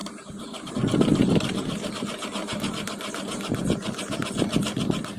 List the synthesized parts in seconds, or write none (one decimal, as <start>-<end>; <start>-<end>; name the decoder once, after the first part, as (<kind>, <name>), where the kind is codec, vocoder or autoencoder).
0.0-0.7 (vocoder, BigVGAN v2); 1.1-1.9; 2.4-3.6